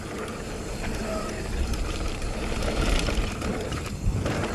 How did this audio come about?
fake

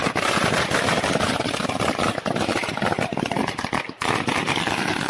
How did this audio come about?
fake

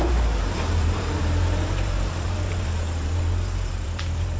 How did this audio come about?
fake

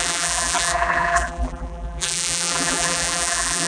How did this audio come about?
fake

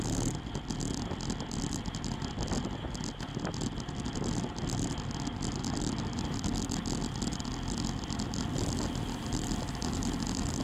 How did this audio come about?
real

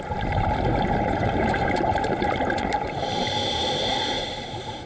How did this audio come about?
fake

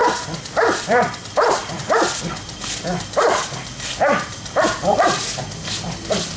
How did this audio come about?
fake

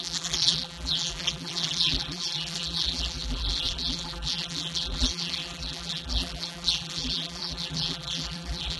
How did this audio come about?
fake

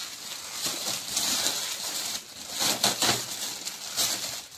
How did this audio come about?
real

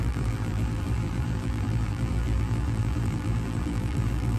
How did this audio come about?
fake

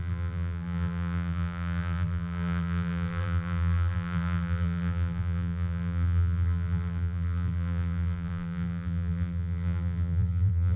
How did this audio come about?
fake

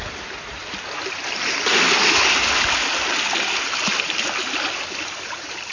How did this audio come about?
real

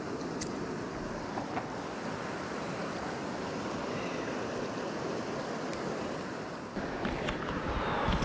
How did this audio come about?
real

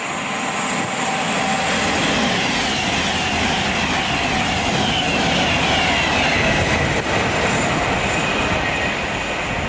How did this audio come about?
real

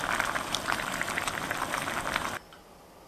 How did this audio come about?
fake